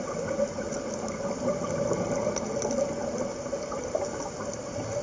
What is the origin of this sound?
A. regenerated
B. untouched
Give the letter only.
B